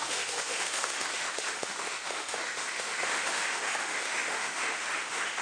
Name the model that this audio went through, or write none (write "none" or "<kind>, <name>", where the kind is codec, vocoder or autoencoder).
autoencoder, DAC-VAE